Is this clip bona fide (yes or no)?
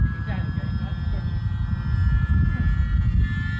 yes